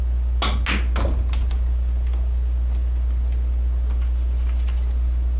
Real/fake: real